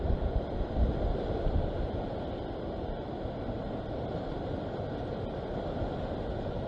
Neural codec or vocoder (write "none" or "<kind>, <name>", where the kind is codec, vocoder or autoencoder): none